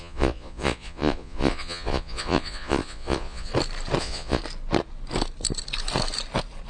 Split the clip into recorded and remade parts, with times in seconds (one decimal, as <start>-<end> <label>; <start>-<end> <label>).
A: 0.0-3.5 remade; 3.5-4.0 recorded; 4.0-4.4 remade; 4.4-6.7 recorded